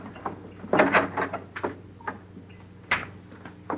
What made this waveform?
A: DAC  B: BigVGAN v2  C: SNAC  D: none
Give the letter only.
D